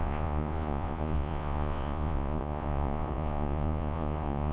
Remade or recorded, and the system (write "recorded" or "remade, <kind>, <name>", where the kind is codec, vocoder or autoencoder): remade, vocoder, Vocos